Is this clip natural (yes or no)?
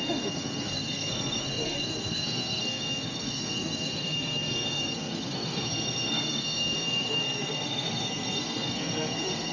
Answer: no